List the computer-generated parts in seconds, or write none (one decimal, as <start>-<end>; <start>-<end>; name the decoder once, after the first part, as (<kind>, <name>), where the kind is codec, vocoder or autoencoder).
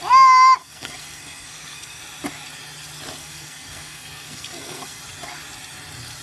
0.6-2.0 (codec, SNAC); 3.2-5.0